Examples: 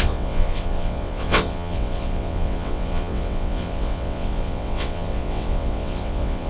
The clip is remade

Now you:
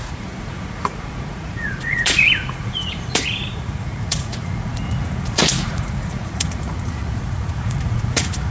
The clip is remade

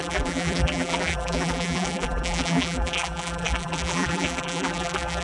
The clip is remade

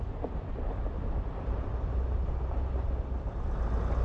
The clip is recorded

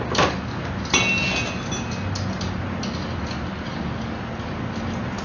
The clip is recorded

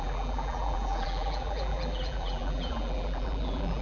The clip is remade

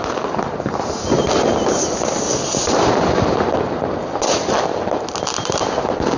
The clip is recorded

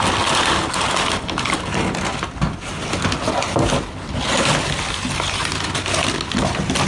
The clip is recorded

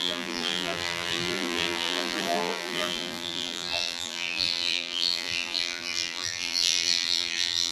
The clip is remade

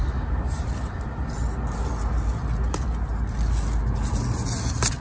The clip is recorded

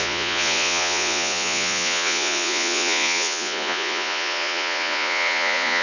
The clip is remade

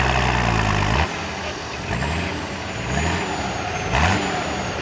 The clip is recorded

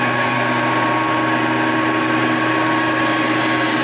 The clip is recorded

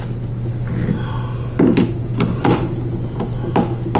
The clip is recorded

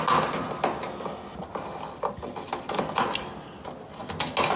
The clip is recorded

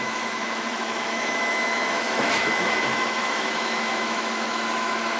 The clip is remade